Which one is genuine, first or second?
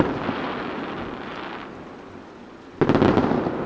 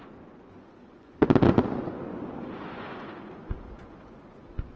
first